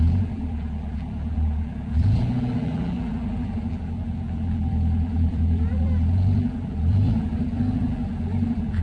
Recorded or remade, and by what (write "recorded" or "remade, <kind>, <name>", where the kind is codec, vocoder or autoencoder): remade, vocoder, BigVGAN v2